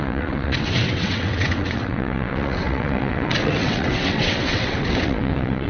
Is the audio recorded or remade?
remade